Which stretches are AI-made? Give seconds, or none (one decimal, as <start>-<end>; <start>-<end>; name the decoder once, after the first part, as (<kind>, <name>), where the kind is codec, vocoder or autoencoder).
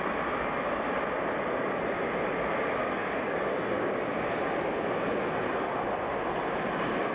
2.8-4.1 (codec, DAC)